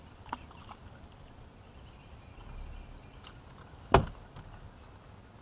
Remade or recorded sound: recorded